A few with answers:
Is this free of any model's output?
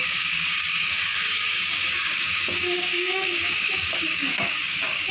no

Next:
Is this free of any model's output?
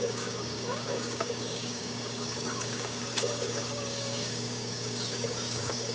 no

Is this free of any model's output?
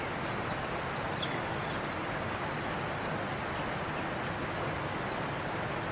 yes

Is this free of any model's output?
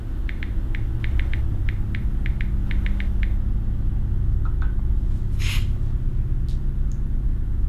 yes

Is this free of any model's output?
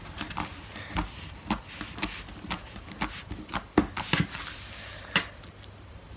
yes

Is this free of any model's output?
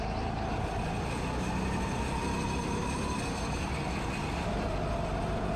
yes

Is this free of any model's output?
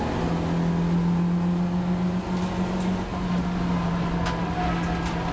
yes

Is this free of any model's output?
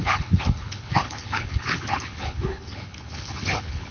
no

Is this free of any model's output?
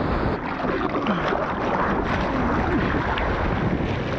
yes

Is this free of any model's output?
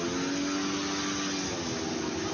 yes